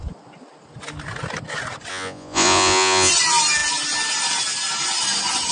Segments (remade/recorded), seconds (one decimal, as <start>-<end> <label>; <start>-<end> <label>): 0.0-1.9 recorded; 1.9-3.1 remade; 3.1-5.5 recorded